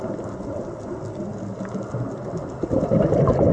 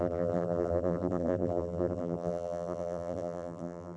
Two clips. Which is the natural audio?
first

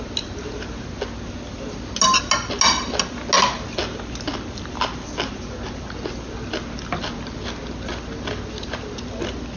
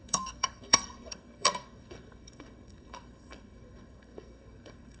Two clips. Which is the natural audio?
first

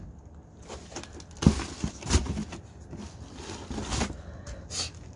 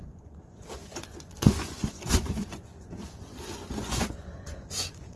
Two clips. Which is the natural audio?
first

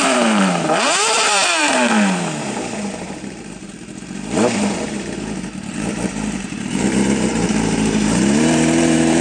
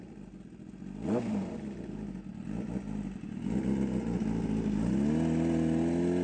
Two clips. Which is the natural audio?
second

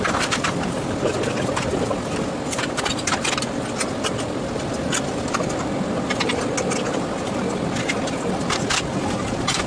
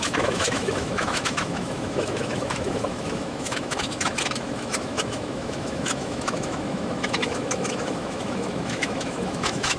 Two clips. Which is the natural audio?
first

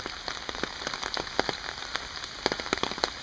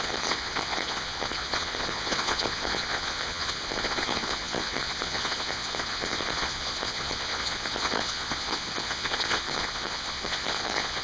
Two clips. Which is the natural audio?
first